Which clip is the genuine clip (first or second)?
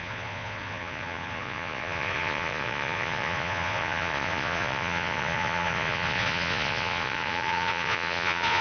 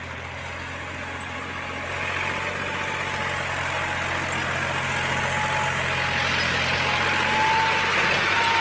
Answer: second